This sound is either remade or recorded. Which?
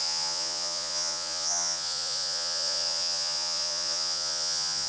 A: remade